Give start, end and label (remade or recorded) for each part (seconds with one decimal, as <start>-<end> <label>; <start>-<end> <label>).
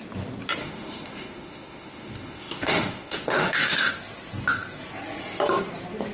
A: 0.0-0.6 recorded; 0.6-3.9 remade; 3.9-6.1 recorded